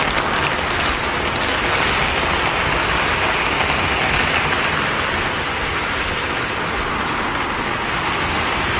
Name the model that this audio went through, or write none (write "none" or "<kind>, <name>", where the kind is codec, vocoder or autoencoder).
none